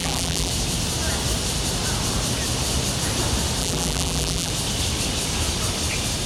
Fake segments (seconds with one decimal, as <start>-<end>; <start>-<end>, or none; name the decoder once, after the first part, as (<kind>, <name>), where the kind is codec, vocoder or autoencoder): 0.0-0.5 (vocoder, BigVGAN v2); 3.6-4.5